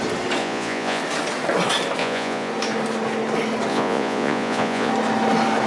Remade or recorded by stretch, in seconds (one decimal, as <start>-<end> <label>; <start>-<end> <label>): 0.0-0.4 recorded; 0.4-1.0 remade; 1.0-2.0 recorded; 2.0-2.5 remade; 2.5-3.7 recorded; 3.7-4.9 remade; 4.9-5.7 recorded